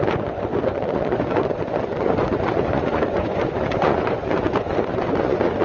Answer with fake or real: fake